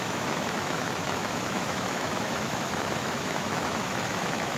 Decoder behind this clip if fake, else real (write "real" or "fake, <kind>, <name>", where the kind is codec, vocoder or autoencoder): fake, autoencoder, DAC-VAE